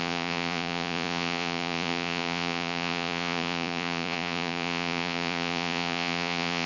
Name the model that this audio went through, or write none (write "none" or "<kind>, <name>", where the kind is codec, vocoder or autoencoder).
vocoder, Vocos